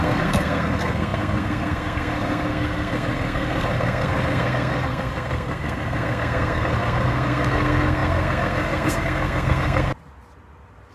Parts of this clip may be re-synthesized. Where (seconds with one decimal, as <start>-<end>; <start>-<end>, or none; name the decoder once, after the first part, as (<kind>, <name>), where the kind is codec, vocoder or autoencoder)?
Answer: 0.0-9.9 (codec, SNAC)